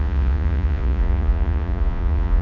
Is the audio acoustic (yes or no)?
no